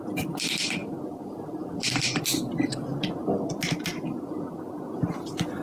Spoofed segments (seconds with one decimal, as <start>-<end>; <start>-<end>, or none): 0.8-2.4